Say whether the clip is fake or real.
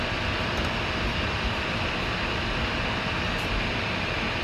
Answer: real